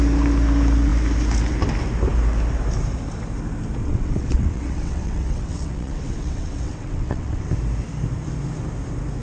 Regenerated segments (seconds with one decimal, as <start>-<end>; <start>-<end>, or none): 3.8-7.5